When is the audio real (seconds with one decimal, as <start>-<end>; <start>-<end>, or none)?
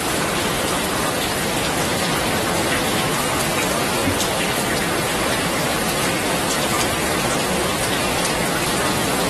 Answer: 0.0-9.3